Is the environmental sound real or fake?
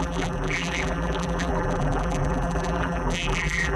fake